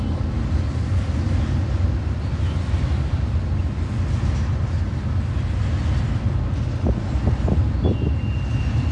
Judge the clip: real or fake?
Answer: real